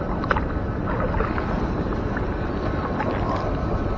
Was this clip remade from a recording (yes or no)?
no